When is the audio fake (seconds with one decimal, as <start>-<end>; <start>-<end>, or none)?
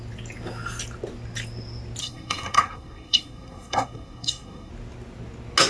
2.0-4.7